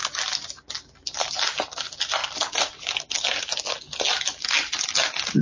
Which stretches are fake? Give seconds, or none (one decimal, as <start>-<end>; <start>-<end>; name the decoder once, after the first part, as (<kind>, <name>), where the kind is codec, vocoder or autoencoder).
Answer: 2.2-3.3 (vocoder, BigVGAN v2)